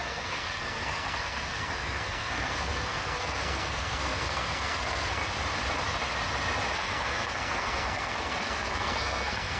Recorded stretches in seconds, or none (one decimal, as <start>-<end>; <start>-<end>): 5.2-6.7

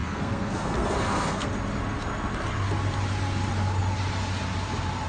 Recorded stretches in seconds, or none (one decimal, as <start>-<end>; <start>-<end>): 1.5-5.1